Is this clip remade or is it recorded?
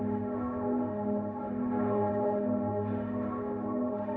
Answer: remade